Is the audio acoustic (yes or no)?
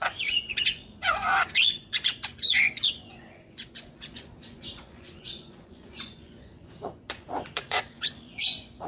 no